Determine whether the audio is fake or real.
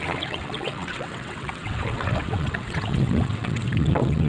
fake